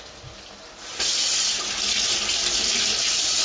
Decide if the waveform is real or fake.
real